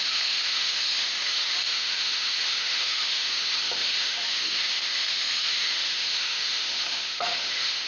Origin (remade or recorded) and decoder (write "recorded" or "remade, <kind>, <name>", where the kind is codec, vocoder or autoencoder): remade, autoencoder, DAC-VAE